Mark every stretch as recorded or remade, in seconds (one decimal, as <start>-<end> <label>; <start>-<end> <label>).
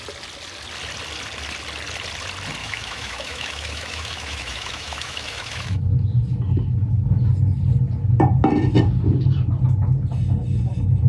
0.0-2.6 recorded; 2.6-5.8 remade; 5.8-11.1 recorded